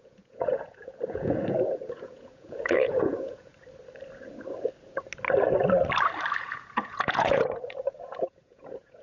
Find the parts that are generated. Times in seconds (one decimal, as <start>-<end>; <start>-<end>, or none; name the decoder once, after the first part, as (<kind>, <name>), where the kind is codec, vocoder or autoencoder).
0.0-3.5 (vocoder, Vocos); 6.4-9.0